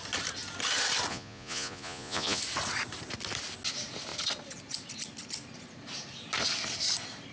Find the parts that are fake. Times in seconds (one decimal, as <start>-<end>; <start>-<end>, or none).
1.1-2.4